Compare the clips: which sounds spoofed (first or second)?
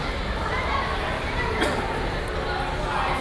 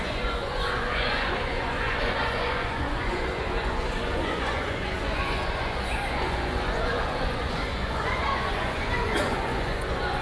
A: second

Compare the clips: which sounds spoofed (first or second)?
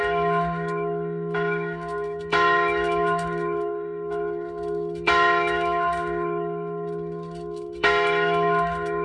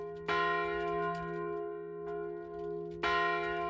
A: first